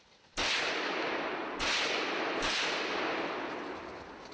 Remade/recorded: recorded